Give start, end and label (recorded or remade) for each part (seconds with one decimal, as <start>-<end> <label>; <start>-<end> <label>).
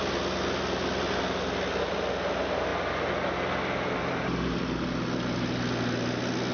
0.0-6.5 recorded